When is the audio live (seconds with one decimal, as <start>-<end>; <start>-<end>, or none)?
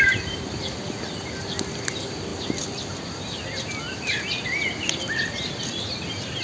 0.0-6.4